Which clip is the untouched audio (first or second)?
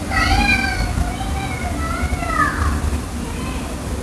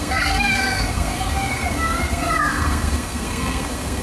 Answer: first